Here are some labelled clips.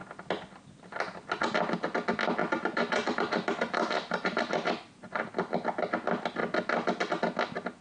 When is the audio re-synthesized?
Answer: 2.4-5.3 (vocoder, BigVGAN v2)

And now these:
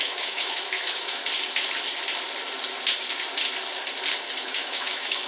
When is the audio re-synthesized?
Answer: 0.0-1.2 (autoencoder, DAC-VAE); 4.4-5.3

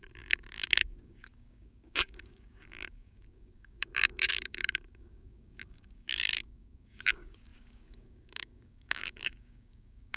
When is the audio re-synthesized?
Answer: 0.0-10.2 (codec, DAC)

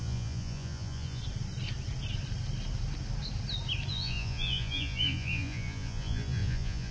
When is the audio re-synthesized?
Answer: 0.0-1.2 (vocoder, Vocos); 3.9-6.9

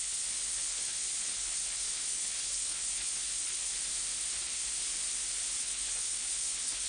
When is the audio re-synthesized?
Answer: 0.0-3.7 (codec, HILCodec); 4.3-4.7; 5.6-6.9

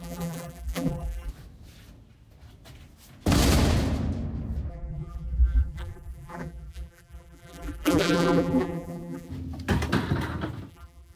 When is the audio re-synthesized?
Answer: 0.0-1.3 (vocoder, BigVGAN v2); 4.7-9.3; 10.7-11.2